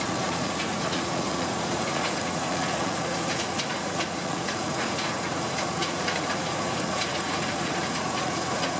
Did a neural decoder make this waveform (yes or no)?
yes